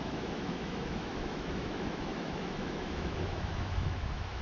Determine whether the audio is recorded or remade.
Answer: remade